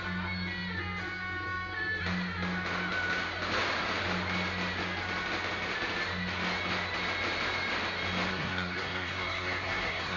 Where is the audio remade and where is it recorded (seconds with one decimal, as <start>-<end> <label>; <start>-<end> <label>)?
0.0-8.3 recorded; 8.3-10.2 remade